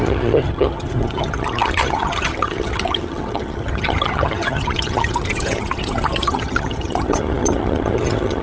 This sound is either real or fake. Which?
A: fake